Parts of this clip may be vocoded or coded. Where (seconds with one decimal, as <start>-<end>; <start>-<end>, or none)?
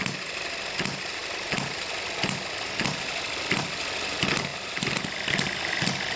none